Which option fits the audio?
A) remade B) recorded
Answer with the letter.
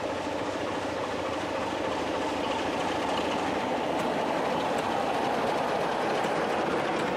A